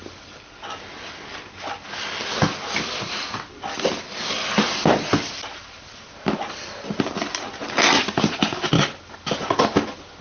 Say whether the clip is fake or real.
real